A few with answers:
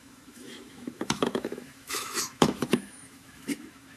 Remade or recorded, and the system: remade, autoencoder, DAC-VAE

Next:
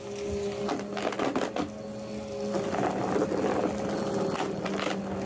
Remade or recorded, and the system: recorded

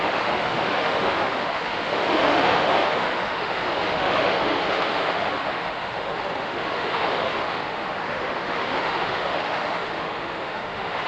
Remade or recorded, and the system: remade, autoencoder, DAC-VAE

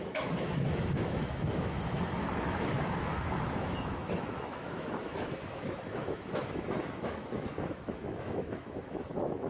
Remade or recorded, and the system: remade, autoencoder, DAC-VAE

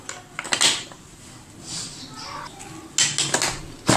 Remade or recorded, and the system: recorded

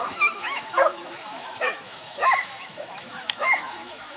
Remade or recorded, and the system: remade, autoencoder, DAC-VAE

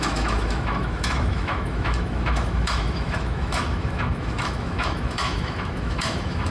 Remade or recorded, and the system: remade, autoencoder, DAC-VAE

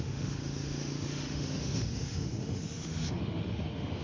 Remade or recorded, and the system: remade, autoencoder, DAC-VAE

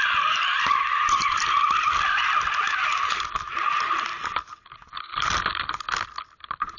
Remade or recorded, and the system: recorded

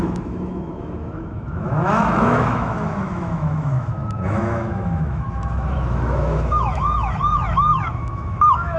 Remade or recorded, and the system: remade, autoencoder, DAC-VAE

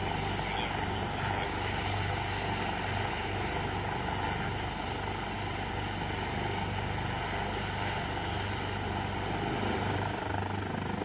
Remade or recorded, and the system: recorded